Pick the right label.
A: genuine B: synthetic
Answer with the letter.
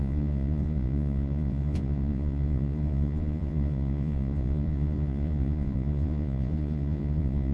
B